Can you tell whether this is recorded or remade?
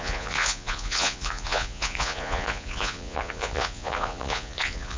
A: remade